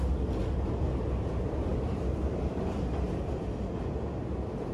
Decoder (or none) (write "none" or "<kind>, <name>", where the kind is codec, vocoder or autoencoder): none